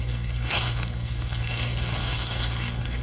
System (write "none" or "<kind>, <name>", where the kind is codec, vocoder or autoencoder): codec, SNAC